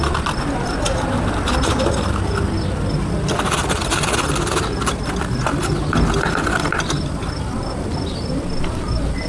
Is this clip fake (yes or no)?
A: no